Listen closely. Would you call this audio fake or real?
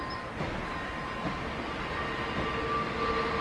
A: real